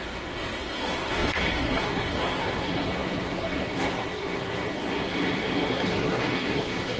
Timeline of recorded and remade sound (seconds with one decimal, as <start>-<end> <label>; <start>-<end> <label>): 0.0-7.0 remade